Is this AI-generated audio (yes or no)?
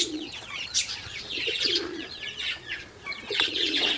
yes